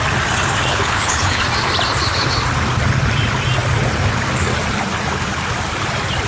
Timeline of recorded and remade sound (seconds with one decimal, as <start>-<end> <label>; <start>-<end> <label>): 0.0-0.7 recorded; 0.7-1.4 remade; 1.4-6.3 recorded